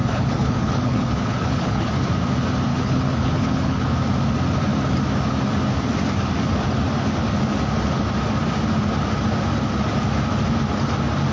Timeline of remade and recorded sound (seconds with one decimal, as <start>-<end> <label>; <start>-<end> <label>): 0.0-1.9 remade; 1.9-2.7 recorded; 2.7-3.8 remade; 3.8-11.3 recorded

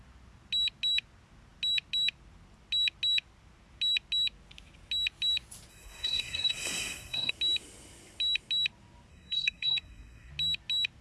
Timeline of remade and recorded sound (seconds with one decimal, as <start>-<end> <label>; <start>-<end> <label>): 0.0-5.7 recorded; 5.7-7.3 remade; 7.3-9.1 recorded; 9.1-10.3 remade; 10.3-11.0 recorded